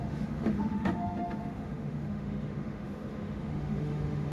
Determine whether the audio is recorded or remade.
remade